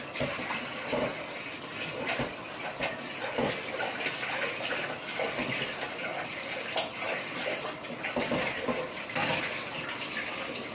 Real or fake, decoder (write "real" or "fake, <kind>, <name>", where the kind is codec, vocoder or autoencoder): real